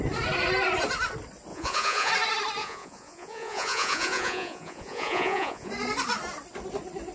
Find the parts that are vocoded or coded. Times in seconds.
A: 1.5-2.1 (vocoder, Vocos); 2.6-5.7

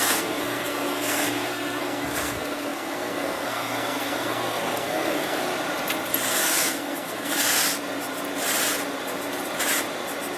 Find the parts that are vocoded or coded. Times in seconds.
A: 0.0-5.5 (codec, SNAC); 6.3-7.6

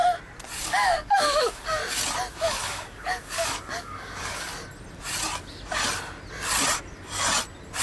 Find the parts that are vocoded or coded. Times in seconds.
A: 0.6-1.8 (codec, DAC); 2.3-4.5

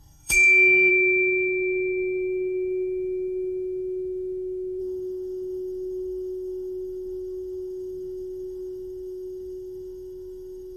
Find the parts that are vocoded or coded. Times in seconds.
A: 0.0-0.9 (codec, SNAC); 4.8-10.8

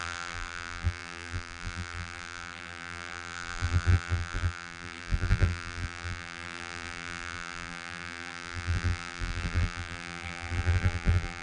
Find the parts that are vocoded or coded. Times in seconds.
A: 0.0-11.4 (vocoder, BigVGAN v2)

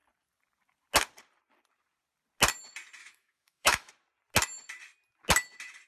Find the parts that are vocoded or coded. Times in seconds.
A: 3.0-3.9 (autoencoder, DAC-VAE)

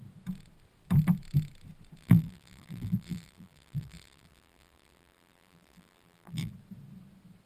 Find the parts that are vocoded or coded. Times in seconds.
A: 2.0-6.5 (vocoder, BigVGAN v2)

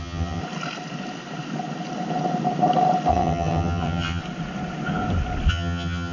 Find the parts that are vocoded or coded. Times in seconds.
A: 0.0-0.4 (vocoder, HiFi-GAN); 3.1-4.2; 5.5-6.1